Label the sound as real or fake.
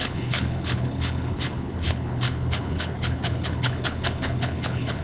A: fake